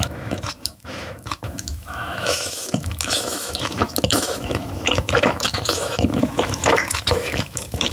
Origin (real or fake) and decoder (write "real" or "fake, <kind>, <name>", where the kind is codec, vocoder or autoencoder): fake, autoencoder, DAC-VAE